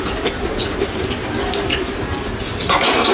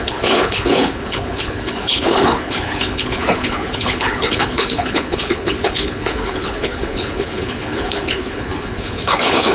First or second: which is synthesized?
second